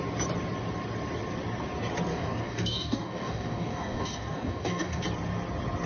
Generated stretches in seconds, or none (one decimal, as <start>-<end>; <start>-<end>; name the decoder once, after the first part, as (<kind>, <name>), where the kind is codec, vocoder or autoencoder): 2.1-5.0 (codec, DAC)